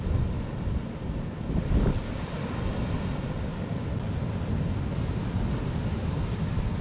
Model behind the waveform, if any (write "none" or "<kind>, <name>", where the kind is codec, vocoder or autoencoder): none